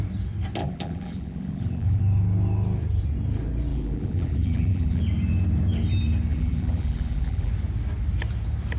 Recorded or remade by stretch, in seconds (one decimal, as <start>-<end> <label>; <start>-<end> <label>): 0.0-0.6 recorded; 0.6-2.0 remade; 2.0-3.7 recorded; 3.7-5.0 remade; 5.0-6.3 recorded; 6.3-7.5 remade; 7.5-8.8 recorded